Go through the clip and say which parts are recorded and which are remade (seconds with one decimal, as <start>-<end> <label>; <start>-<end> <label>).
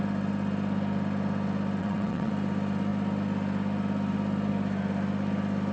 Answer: 0.0-1.8 recorded; 1.8-2.3 remade; 2.3-5.7 recorded